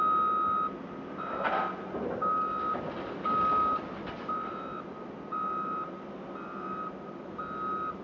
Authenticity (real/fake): real